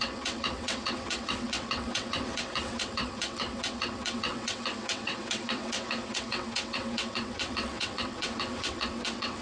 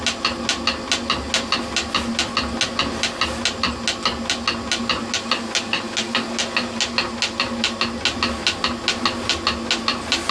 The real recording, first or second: second